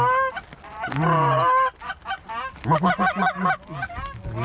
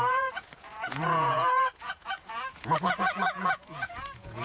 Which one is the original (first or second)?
first